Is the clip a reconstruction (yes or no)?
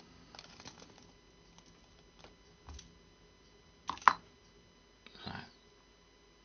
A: no